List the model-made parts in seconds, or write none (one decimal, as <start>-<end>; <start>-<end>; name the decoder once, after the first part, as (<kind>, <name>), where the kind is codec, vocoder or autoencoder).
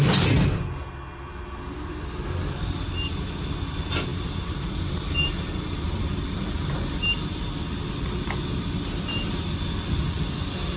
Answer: 4.1-7.4 (vocoder, BigVGAN v2)